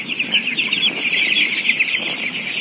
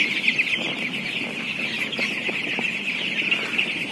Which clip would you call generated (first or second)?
first